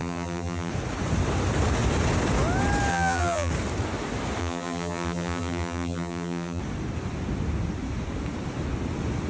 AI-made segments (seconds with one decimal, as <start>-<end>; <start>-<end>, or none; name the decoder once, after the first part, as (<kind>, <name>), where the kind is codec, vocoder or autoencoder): 0.0-0.7 (vocoder, BigVGAN v2); 2.9-3.5; 4.4-6.6